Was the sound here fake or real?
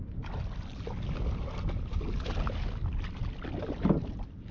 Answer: real